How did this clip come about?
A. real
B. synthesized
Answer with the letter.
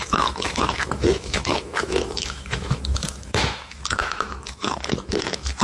B